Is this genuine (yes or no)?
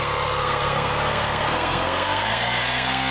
no